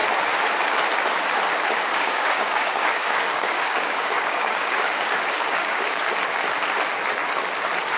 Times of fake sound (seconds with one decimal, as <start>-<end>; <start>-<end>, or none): 1.9-6.0